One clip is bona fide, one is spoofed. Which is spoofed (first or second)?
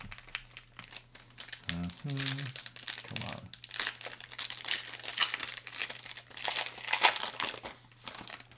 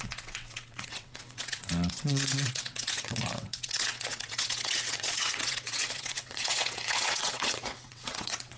second